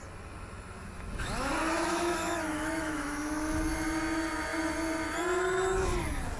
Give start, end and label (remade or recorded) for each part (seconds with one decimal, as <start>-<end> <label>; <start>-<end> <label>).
0.0-0.8 recorded; 0.8-1.5 remade; 1.5-1.9 recorded; 1.9-3.6 remade; 3.6-6.4 recorded